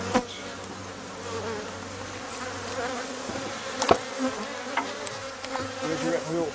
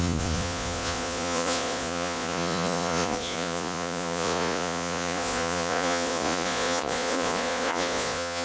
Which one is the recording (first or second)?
first